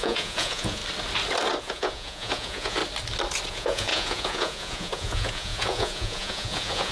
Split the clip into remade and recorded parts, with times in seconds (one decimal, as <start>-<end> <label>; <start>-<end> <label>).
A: 0.0-0.8 remade; 0.8-1.6 recorded; 1.6-2.8 remade; 2.8-3.5 recorded; 3.5-6.9 remade